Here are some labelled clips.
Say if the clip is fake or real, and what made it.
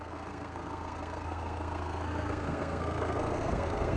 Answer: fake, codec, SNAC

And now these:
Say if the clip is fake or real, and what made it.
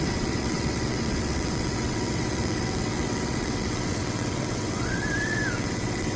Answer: fake, vocoder, WaveNeXt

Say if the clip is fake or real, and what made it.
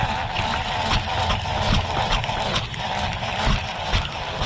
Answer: real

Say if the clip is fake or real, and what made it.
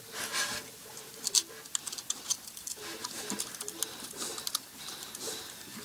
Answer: real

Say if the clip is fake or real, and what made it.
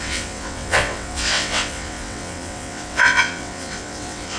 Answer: fake, vocoder, WaveNeXt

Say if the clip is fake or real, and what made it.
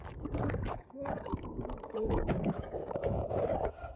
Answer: fake, codec, DAC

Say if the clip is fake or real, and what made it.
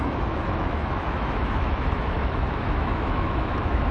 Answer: fake, autoencoder, DAC-VAE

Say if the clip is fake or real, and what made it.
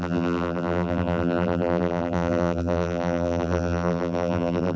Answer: fake, vocoder, BigVGAN v2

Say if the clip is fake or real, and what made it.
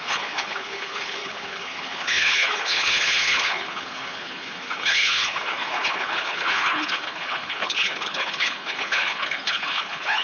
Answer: fake, codec, HILCodec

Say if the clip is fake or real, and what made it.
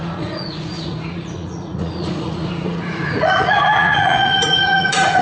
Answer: fake, vocoder, Vocos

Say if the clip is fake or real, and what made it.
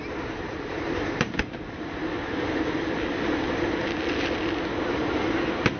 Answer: real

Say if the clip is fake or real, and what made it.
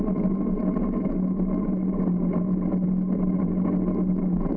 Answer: real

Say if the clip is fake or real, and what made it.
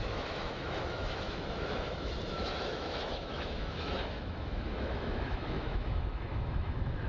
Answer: fake, autoencoder, DAC-VAE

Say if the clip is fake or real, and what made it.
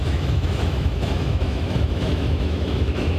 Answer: fake, autoencoder, DAC-VAE